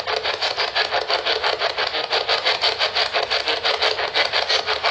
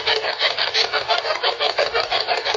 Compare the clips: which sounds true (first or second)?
first